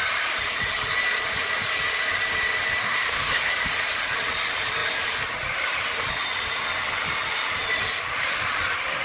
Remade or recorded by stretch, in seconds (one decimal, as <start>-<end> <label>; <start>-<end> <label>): 0.0-2.8 recorded; 2.8-3.5 remade; 3.5-9.0 recorded